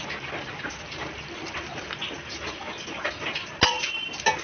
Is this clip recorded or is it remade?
recorded